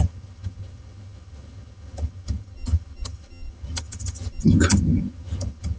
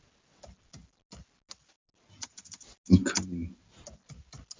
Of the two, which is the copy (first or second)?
first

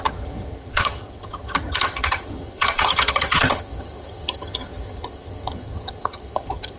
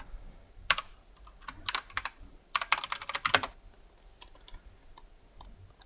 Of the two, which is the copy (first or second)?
first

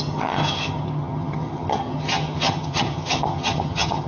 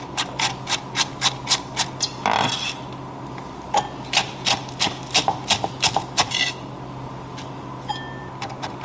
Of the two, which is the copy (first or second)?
first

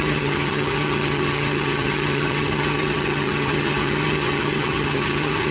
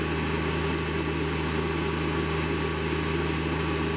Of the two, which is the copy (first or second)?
first